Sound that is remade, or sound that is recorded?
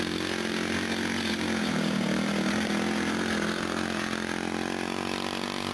recorded